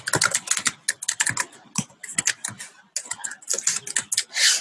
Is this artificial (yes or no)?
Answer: no